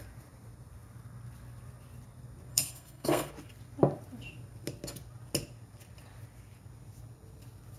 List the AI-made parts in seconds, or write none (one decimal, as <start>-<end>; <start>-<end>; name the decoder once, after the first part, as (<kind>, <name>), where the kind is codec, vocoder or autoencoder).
2.5-3.3 (codec, SNAC)